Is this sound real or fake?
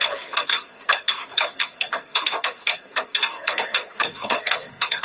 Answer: fake